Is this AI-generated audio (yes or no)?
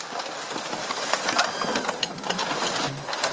no